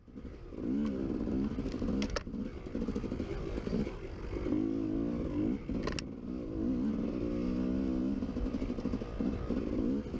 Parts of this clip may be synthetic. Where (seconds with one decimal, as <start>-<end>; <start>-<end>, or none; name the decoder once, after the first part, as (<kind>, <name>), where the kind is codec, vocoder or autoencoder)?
none